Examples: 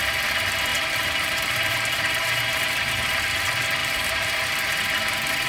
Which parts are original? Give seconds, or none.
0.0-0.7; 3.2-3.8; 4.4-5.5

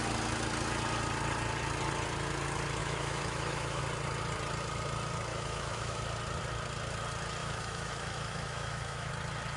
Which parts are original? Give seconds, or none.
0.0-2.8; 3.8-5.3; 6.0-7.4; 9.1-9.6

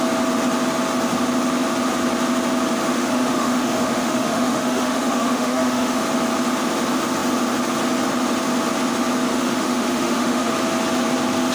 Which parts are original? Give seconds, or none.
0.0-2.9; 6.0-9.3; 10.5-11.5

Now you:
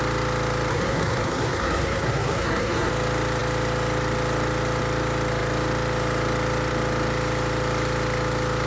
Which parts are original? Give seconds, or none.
0.0-0.7; 2.9-8.7

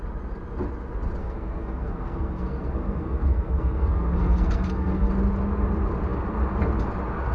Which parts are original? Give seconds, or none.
0.0-1.2; 5.1-7.3

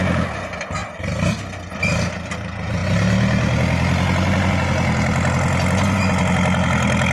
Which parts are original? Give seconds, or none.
0.0-7.1

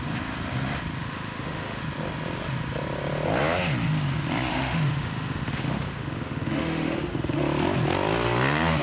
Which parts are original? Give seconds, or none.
0.0-1.0; 1.8-4.5; 7.4-8.8

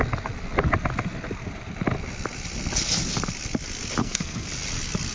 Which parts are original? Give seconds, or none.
0.0-4.0; 4.5-5.1